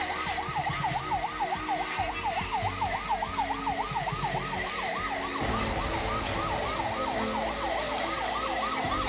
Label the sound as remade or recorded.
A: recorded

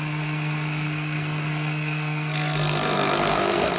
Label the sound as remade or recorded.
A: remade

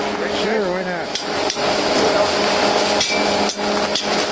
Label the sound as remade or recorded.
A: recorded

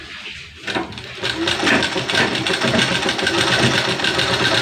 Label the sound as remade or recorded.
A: recorded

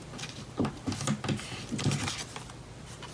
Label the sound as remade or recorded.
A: recorded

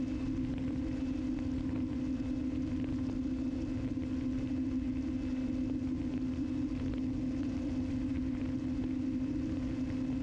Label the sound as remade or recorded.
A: recorded